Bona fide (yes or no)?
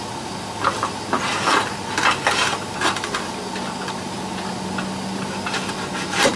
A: yes